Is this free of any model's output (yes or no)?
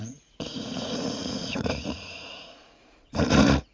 no